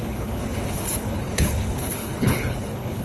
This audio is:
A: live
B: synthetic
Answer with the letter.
B